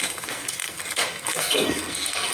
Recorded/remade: remade